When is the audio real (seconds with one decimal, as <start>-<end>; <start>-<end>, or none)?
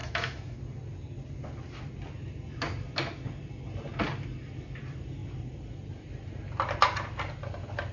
0.6-7.9